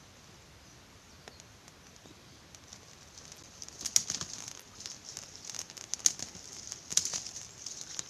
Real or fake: real